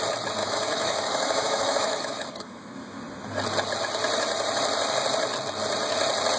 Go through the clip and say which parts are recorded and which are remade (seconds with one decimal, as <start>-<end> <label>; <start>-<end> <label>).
0.0-0.4 recorded; 0.4-3.0 remade; 3.0-6.4 recorded

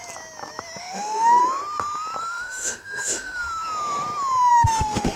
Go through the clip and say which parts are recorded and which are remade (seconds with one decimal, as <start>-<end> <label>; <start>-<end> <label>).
0.0-0.8 recorded; 0.8-1.4 remade; 1.4-2.2 recorded; 2.2-3.4 remade; 3.4-4.5 recorded; 4.5-5.2 remade